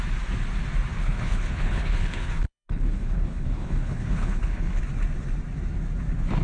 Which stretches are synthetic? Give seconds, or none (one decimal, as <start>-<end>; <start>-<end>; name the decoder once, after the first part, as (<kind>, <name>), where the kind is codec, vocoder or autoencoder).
1.0-4.8 (codec, HILCodec)